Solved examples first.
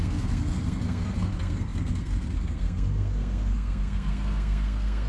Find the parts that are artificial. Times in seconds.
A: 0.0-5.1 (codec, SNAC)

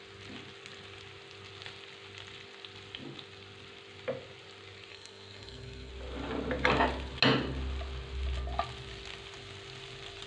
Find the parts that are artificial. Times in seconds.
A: 4.9-5.9 (codec, SNAC)

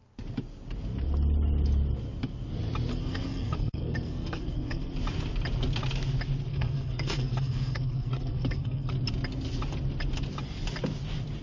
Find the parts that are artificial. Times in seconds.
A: 2.9-4.9 (codec, SNAC); 6.5-8.9

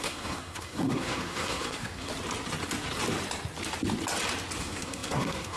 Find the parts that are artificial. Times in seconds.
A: 0.0-2.1 (codec, SNAC); 4.6-5.6